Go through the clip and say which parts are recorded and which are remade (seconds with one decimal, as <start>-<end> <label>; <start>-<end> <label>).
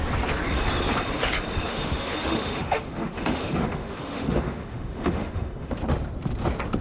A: 0.0-1.7 recorded; 1.7-5.8 remade; 5.8-6.8 recorded